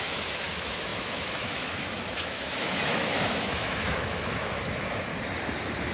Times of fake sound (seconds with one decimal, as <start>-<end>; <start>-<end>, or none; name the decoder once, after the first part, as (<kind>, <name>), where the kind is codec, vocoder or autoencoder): 0.0-5.1 (autoencoder, DAC-VAE)